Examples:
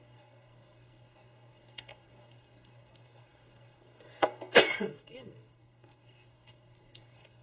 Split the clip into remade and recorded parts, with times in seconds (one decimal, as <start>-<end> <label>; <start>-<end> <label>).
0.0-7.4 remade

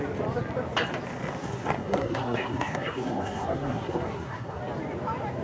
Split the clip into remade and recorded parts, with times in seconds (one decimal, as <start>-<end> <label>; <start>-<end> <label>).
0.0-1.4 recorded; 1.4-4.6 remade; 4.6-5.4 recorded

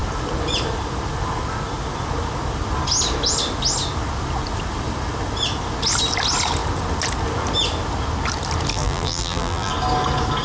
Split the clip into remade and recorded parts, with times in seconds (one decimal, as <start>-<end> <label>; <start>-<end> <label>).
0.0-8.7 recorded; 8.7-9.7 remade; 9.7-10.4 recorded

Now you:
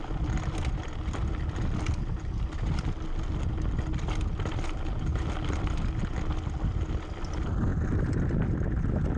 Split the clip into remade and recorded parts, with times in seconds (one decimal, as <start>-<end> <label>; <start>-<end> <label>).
0.0-5.1 recorded; 5.1-5.8 remade; 5.8-9.2 recorded

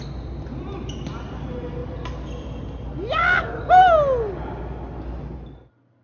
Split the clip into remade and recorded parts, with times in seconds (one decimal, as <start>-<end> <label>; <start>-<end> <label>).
0.0-6.0 recorded

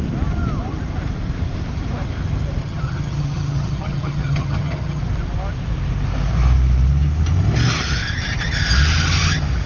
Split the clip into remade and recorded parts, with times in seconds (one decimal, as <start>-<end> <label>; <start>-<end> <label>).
0.0-2.6 recorded; 2.6-5.0 remade; 5.0-9.7 recorded

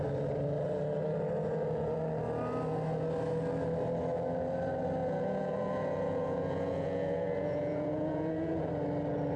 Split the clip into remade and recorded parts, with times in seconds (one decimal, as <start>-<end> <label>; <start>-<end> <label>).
0.0-5.0 recorded; 5.0-8.7 remade; 8.7-9.4 recorded

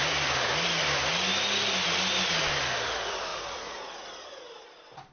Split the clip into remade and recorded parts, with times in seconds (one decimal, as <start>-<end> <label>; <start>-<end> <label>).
0.0-3.3 recorded; 3.3-4.0 remade; 4.0-5.1 recorded